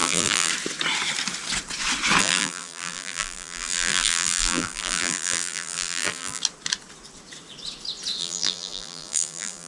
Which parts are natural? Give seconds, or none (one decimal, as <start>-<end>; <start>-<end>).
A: 0.5-2.2; 6.4-8.2